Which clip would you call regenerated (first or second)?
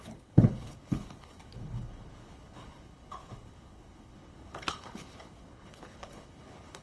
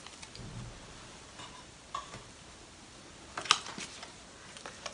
first